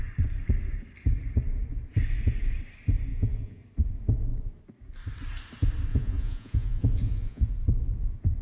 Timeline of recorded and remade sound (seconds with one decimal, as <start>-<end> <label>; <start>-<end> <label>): 0.0-3.1 recorded; 3.1-3.6 remade; 3.6-5.9 recorded; 5.9-7.5 remade; 7.5-8.4 recorded